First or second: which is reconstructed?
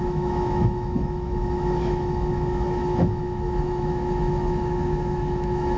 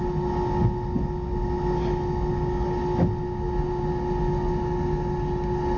first